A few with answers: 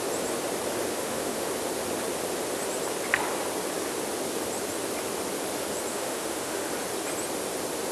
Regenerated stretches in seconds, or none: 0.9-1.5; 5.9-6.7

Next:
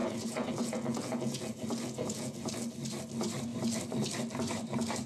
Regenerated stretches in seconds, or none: 0.0-2.5

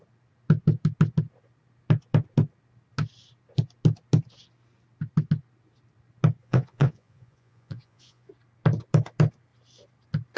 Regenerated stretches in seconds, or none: 6.4-8.3